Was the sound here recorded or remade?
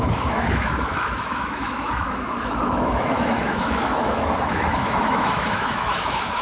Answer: remade